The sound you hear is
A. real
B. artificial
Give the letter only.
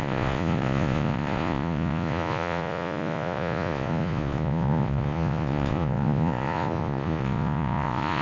B